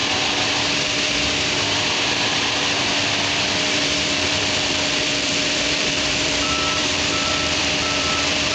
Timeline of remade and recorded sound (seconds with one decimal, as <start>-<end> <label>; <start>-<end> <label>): 0.0-3.5 recorded; 3.5-8.5 remade